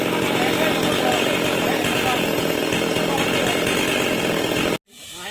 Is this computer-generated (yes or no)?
no